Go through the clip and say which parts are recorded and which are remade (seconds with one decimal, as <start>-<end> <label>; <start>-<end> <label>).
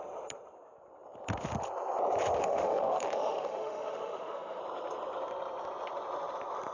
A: 0.0-2.4 recorded; 2.4-4.6 remade; 4.6-6.7 recorded